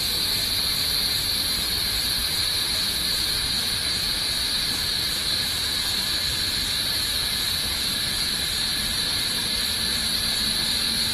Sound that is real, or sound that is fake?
real